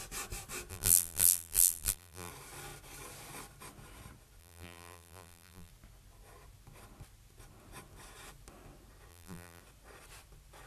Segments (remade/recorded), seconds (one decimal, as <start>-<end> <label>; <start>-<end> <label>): 0.0-0.7 recorded; 0.7-2.3 remade; 2.3-4.4 recorded; 4.4-5.7 remade; 5.7-9.1 recorded; 9.1-9.6 remade; 9.6-10.7 recorded